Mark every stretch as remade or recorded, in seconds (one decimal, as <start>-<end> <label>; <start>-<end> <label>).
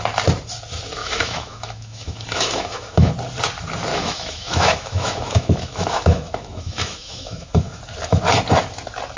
0.0-1.0 recorded; 1.0-3.1 remade; 3.1-3.9 recorded; 3.9-7.8 remade; 7.8-9.2 recorded